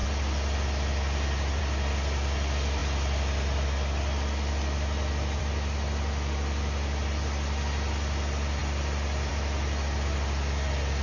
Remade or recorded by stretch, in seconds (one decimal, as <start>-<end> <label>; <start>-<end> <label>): 0.0-11.0 recorded